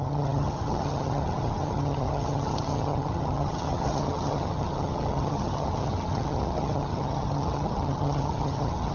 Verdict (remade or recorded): remade